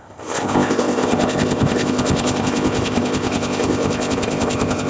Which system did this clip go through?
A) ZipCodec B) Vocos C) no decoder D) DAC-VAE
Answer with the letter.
A